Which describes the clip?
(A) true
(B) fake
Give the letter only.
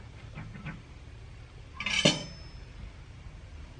A